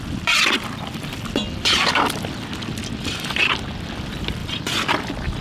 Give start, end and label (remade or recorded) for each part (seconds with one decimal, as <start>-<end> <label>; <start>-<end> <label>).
0.0-5.4 recorded